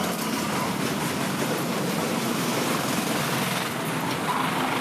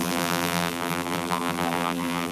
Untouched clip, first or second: first